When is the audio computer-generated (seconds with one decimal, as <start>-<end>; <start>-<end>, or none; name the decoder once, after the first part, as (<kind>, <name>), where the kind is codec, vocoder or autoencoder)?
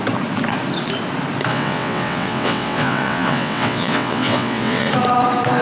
1.5-4.9 (vocoder, WaveNeXt)